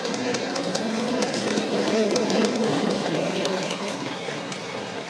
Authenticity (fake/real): fake